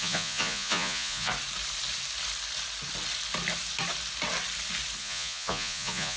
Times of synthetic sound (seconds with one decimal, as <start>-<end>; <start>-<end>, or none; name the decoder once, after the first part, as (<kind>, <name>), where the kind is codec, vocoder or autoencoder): 0.0-1.3 (vocoder, Vocos); 5.0-6.2